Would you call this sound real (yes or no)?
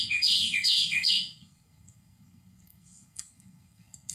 no